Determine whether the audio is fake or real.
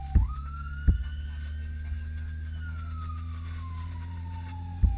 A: real